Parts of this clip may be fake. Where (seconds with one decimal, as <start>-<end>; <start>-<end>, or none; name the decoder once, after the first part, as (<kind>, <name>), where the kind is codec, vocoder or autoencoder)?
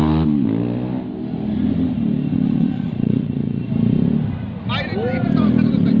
2.3-3.7 (vocoder, Vocos)